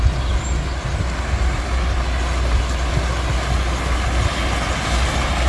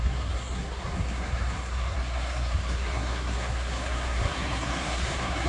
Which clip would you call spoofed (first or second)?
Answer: second